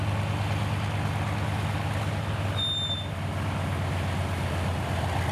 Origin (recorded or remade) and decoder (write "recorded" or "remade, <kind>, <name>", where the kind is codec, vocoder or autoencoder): recorded